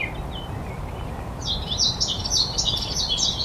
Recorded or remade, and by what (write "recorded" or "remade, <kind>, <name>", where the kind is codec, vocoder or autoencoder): recorded